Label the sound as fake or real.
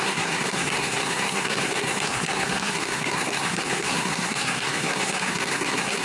fake